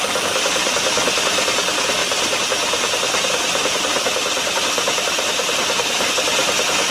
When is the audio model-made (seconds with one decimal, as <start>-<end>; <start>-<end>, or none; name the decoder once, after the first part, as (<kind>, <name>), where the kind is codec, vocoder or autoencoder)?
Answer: 2.0-6.1 (vocoder, BigVGAN v2)